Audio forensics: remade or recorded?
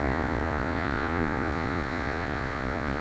remade